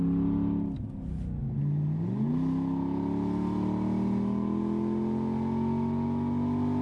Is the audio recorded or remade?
recorded